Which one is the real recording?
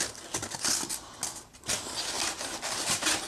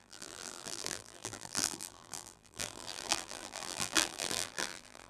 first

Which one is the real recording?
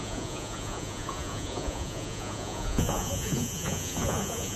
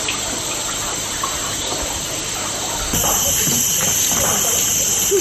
second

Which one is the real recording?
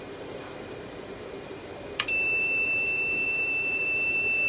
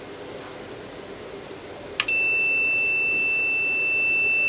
second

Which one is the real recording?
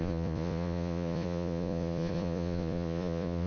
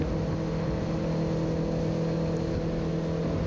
second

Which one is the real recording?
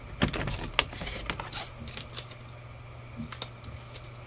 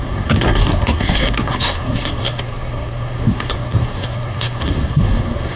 first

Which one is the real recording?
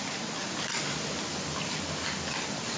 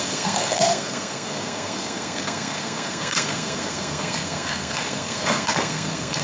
first